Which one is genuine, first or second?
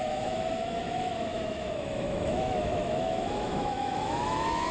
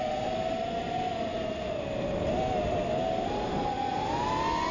second